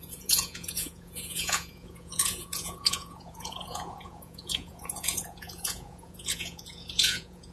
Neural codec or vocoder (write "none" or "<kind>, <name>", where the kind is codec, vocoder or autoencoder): vocoder, Vocos